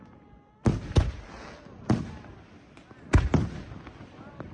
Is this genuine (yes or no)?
yes